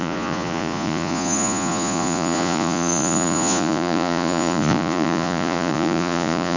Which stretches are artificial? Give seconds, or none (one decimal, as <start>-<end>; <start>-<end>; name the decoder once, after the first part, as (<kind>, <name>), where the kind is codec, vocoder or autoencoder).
0.0-6.6 (vocoder, Vocos)